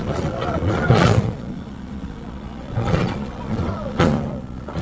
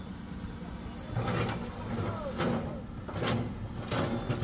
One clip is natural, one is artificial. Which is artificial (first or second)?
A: first